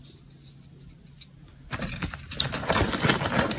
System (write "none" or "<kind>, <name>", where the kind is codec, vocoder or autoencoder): none